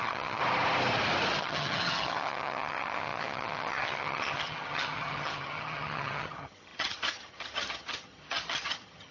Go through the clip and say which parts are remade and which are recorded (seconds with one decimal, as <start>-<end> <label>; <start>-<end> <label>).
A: 0.0-0.4 remade; 0.4-1.4 recorded; 1.4-9.1 remade